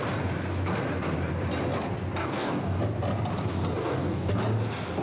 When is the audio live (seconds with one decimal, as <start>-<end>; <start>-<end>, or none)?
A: 0.0-2.2; 2.8-3.8; 4.4-5.0